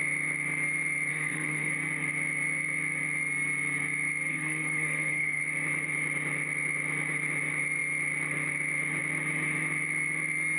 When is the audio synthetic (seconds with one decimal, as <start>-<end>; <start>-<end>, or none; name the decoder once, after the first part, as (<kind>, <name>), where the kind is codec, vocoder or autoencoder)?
1.1-1.7 (codec, SNAC); 4.3-5.4